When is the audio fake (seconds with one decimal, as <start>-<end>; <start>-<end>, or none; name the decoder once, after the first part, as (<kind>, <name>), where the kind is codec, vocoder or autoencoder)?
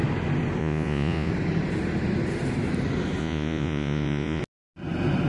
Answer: 0.6-1.3 (vocoder, Vocos); 3.2-4.4